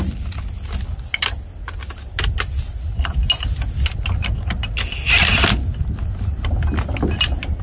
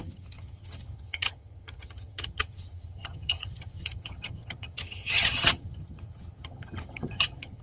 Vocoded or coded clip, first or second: second